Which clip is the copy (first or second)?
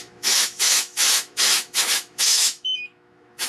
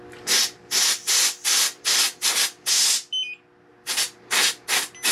first